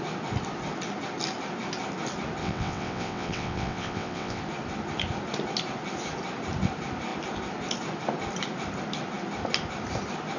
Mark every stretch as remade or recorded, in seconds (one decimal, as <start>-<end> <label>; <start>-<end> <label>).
0.0-2.4 recorded; 2.4-4.4 remade; 4.4-10.4 recorded